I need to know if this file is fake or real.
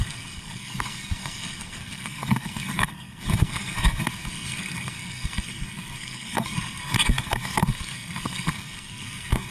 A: fake